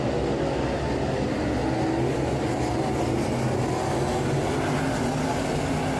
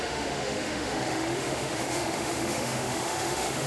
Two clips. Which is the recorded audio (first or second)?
first